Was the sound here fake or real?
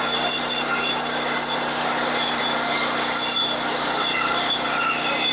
real